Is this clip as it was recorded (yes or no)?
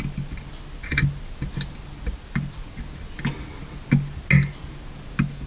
yes